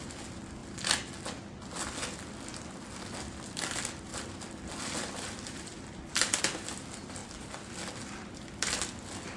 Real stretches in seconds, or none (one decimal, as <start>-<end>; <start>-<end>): 0.0-4.1; 6.4-7.2; 7.7-9.4